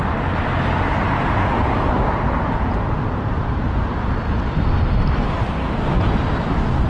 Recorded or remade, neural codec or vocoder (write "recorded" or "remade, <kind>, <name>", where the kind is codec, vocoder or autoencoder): recorded